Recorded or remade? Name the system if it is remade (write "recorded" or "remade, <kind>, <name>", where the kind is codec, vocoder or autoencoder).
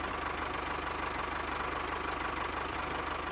recorded